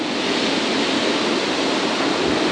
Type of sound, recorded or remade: recorded